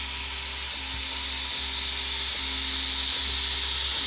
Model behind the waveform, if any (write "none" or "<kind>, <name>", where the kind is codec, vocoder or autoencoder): none